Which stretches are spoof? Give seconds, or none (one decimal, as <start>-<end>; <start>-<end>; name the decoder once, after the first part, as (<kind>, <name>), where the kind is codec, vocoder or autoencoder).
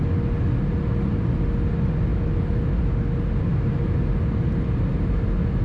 none